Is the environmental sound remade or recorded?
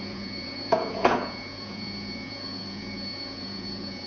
remade